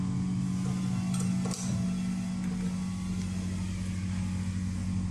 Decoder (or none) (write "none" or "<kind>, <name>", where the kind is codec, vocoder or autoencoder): none